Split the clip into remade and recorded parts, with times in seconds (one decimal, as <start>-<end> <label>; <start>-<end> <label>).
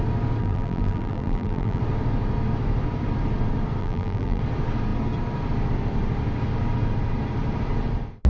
0.0-0.4 recorded; 0.4-1.8 remade; 1.8-3.8 recorded; 3.8-4.4 remade; 4.4-8.3 recorded